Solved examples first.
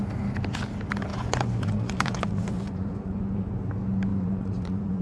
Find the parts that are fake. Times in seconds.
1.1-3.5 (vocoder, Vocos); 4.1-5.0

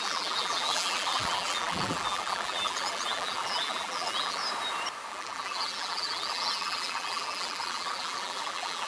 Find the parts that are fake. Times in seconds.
0.0-4.4 (vocoder, BigVGAN v2); 5.1-8.9

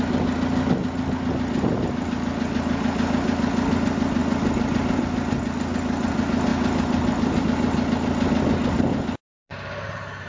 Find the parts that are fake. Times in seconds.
none

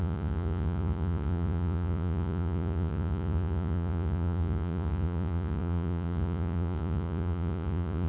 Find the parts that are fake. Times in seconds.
0.0-8.1 (vocoder, Vocos)

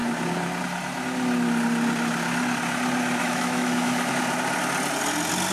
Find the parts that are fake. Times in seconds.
3.2-4.1 (autoencoder, DAC-VAE)

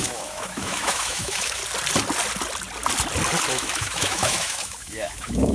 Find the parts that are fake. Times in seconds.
0.0-1.6 (autoencoder, DAC-VAE); 3.5-5.5